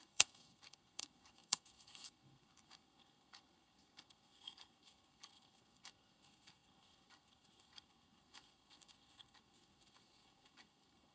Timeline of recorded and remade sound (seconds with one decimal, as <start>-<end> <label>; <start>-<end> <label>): 0.0-11.1 remade